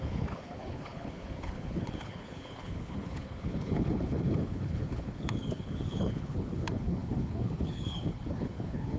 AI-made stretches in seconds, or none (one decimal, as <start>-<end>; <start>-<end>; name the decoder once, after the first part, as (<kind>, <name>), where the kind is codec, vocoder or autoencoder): 0.0-9.0 (codec, HILCodec)